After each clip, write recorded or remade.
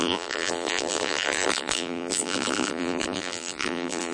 remade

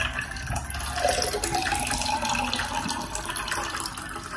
recorded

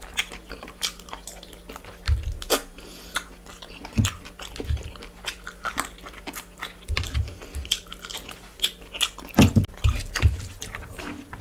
recorded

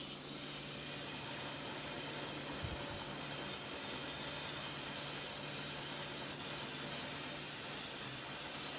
recorded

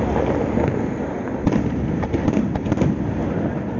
recorded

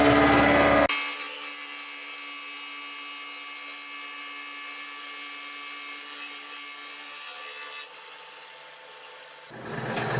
recorded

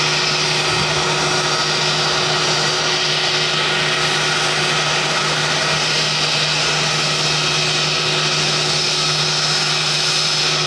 recorded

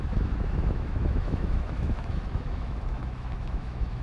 remade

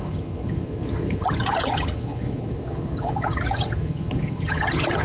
remade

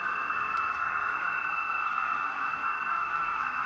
remade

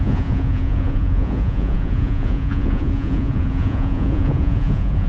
remade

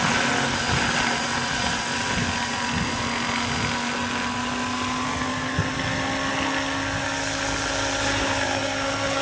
recorded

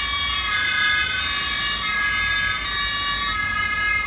recorded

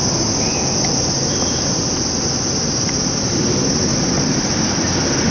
recorded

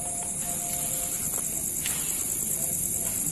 recorded